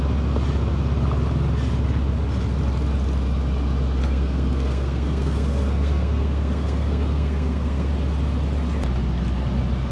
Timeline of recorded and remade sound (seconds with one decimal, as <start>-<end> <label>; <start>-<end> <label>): 0.0-4.0 recorded; 4.0-7.9 remade; 7.9-9.9 recorded